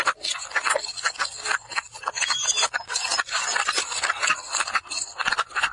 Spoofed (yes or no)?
no